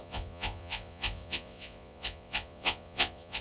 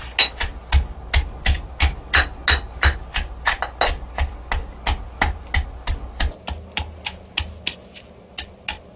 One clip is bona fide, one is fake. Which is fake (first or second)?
first